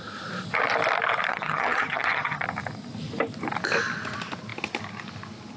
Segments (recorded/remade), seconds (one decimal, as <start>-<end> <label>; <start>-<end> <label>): 0.0-1.3 recorded; 1.3-2.4 remade; 2.4-5.6 recorded